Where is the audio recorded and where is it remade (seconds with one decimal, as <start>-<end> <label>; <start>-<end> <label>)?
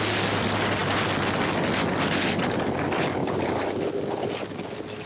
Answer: 0.0-3.2 recorded; 3.2-3.9 remade; 3.9-5.1 recorded